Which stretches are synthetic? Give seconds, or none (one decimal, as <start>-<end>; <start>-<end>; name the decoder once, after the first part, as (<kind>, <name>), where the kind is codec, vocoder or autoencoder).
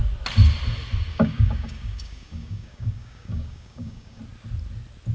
1.1-4.2 (codec, DAC)